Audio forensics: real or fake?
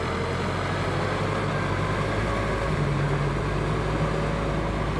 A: real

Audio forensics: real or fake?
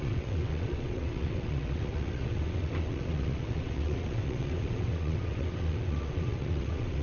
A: fake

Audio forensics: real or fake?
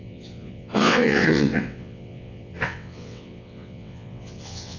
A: fake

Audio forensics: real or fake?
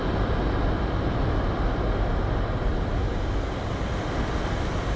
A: real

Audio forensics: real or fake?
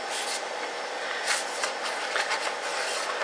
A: real